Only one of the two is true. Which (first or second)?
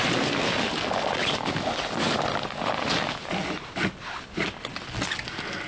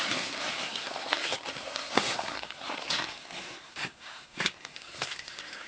first